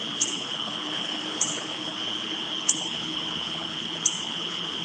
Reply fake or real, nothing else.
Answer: fake